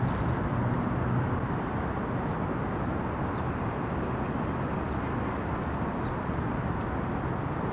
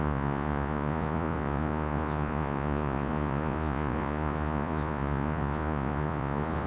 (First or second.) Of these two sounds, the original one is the first